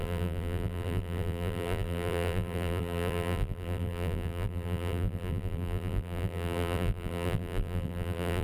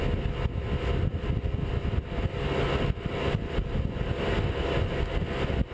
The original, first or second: second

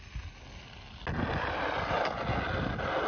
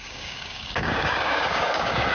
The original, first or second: first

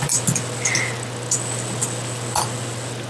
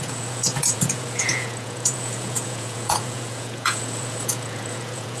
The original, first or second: first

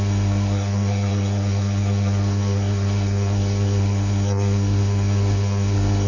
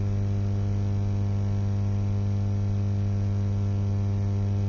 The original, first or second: second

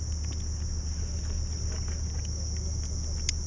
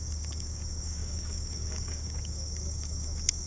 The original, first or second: first